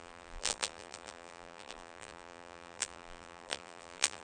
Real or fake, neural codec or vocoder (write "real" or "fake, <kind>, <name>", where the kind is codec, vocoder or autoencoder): fake, vocoder, BigVGAN v2